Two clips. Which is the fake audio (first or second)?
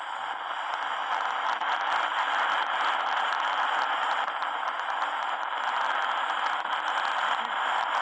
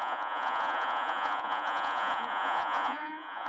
second